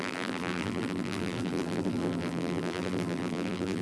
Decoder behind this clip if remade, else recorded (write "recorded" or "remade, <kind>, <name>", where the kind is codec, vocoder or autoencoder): remade, vocoder, BigVGAN v2